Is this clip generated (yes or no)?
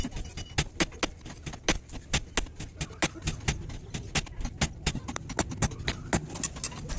no